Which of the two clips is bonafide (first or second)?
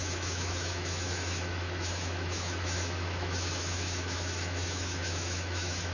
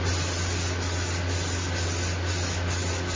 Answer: second